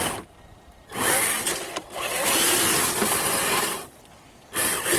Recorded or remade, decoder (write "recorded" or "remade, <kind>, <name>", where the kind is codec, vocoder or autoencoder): recorded